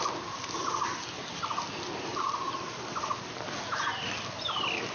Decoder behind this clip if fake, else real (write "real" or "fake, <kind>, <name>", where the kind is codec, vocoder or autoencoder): real